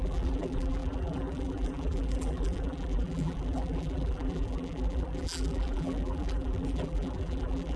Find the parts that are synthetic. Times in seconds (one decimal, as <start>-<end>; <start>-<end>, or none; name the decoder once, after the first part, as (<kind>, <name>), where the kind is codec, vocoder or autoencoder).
0.0-7.8 (vocoder, BigVGAN v2)